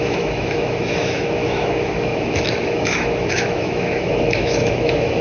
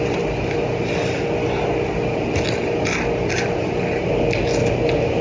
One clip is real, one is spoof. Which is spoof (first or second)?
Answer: first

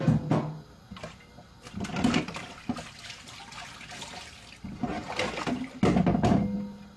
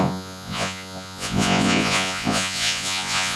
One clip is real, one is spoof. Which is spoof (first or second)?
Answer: second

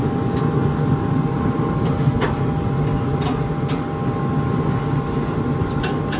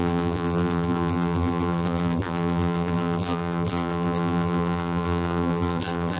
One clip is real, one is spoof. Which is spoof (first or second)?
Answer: second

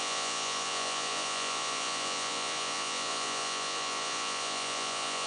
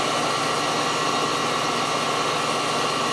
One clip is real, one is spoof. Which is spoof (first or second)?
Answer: first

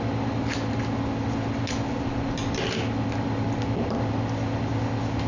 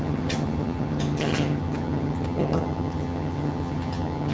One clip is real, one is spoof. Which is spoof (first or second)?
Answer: second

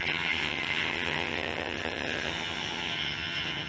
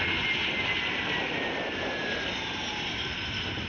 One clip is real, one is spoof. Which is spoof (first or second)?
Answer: first